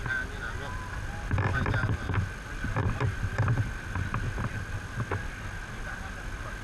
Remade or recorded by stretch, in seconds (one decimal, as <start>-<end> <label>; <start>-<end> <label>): 0.0-6.6 recorded